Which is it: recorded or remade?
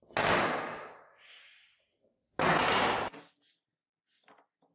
recorded